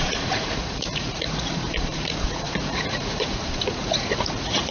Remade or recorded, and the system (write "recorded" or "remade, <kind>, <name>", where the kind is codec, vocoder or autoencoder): remade, vocoder, Vocos